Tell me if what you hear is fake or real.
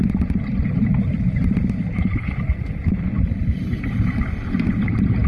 fake